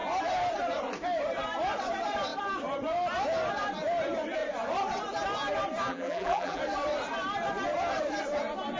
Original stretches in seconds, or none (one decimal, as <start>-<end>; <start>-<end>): 0.0-5.9; 6.6-8.8